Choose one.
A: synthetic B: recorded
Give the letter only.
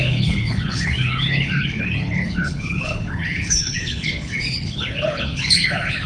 A